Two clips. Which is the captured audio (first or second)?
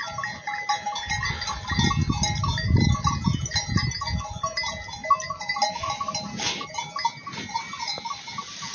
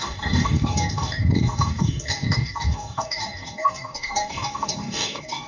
first